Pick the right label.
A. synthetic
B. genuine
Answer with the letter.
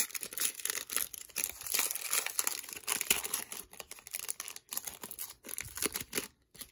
B